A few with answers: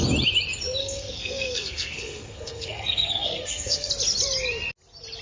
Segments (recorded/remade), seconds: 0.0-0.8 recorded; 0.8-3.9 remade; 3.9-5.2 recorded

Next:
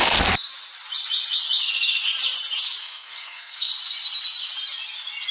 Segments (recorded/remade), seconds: 0.0-2.8 recorded; 2.8-3.7 remade; 3.7-5.3 recorded

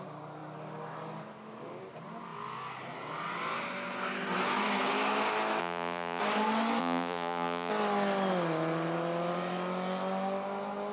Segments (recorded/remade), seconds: 0.0-5.6 recorded; 5.6-6.2 remade; 6.2-6.8 recorded; 6.8-7.7 remade; 7.7-10.9 recorded

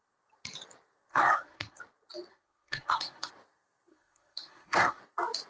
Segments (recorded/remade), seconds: 0.0-1.1 recorded; 1.1-1.8 remade; 1.8-2.3 recorded; 2.3-3.3 remade; 3.3-3.9 recorded; 3.9-5.0 remade; 5.0-5.5 recorded

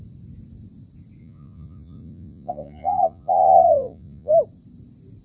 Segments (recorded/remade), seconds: 0.0-1.2 recorded; 1.2-4.3 remade; 4.3-5.2 recorded

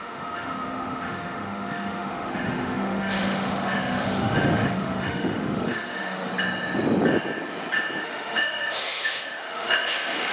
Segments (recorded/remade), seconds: 0.0-6.3 remade; 6.3-8.0 recorded; 8.0-10.3 remade

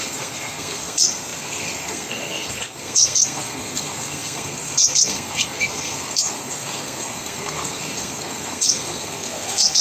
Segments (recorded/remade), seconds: 0.0-9.8 remade